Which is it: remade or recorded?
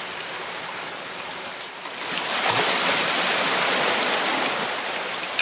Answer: recorded